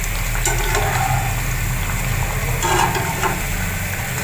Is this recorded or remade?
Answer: recorded